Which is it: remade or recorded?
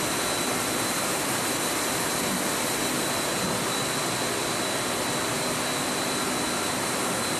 recorded